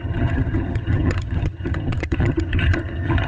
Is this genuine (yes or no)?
no